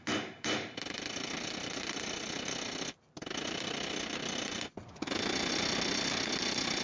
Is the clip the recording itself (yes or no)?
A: yes